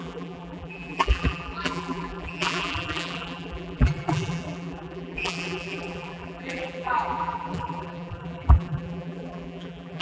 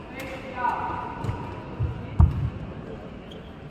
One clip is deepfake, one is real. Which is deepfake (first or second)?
first